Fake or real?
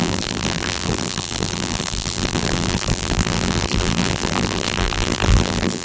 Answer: fake